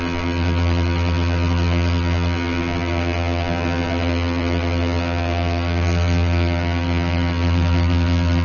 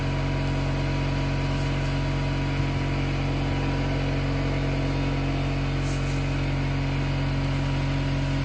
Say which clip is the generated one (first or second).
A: first